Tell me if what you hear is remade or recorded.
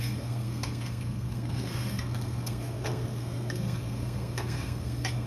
remade